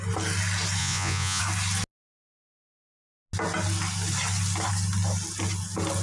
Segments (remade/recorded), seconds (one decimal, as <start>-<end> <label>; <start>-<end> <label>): 0.0-0.8 recorded; 0.8-1.4 remade; 1.4-6.0 recorded